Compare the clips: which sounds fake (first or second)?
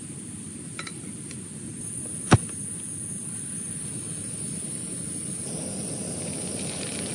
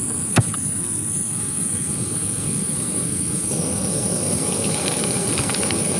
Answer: second